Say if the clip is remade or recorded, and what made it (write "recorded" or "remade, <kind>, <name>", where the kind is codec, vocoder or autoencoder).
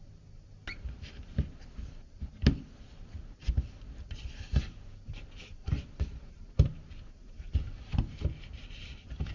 recorded